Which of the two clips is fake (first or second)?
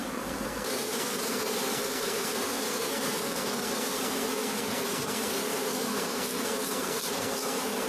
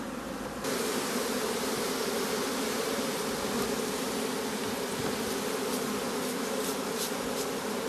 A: first